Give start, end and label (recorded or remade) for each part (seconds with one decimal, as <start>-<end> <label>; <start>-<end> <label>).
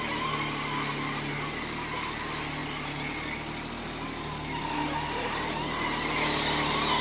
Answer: 0.0-7.0 recorded